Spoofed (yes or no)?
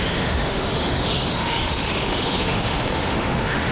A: yes